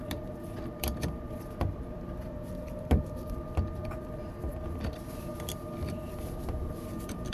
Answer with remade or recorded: remade